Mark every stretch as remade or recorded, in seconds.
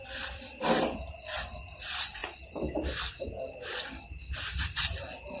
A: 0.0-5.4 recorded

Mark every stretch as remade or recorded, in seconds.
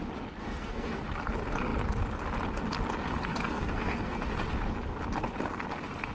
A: 0.0-0.4 recorded; 0.4-1.0 remade; 1.0-3.3 recorded; 3.3-4.2 remade; 4.2-6.1 recorded